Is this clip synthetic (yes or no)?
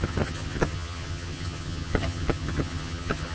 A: yes